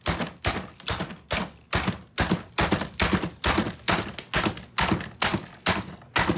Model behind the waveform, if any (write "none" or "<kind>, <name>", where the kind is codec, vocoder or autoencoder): none